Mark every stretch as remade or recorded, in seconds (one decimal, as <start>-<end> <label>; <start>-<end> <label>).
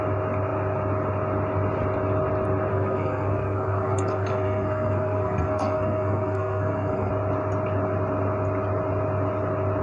0.0-2.7 recorded; 2.7-7.1 remade; 7.1-9.8 recorded